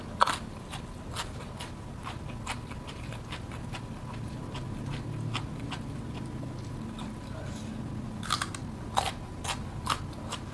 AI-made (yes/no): no